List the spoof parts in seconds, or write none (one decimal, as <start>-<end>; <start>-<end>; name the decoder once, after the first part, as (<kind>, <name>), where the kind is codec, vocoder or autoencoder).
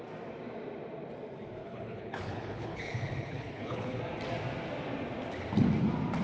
1.6-4.0 (codec, HILCodec)